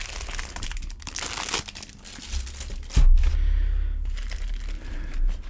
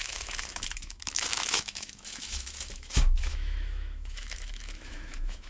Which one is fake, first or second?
second